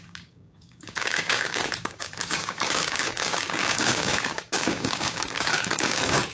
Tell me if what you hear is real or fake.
fake